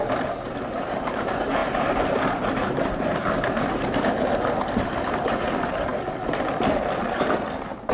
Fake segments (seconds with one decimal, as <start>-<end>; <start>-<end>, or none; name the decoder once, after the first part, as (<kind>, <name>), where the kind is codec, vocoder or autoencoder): 0.0-5.9 (vocoder, BigVGAN v2); 7.0-7.9